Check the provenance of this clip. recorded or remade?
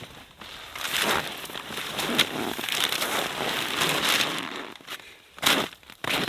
remade